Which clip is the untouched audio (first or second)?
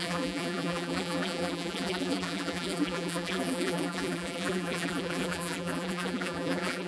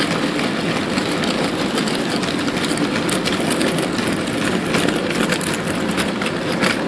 second